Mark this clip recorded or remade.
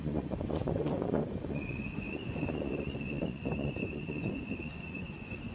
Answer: remade